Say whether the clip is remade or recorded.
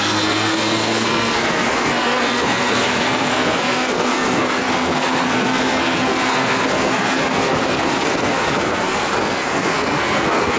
remade